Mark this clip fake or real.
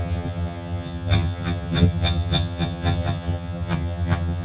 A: fake